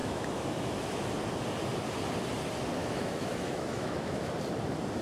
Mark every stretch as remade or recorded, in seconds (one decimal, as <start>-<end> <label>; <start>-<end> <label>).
0.0-1.1 remade; 1.1-2.8 recorded; 2.8-4.3 remade; 4.3-5.0 recorded